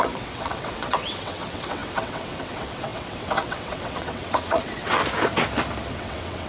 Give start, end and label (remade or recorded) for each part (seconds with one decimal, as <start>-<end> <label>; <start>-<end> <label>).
0.0-5.0 remade; 5.0-5.9 recorded; 5.9-6.5 remade